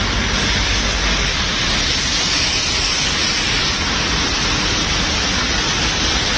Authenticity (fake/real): real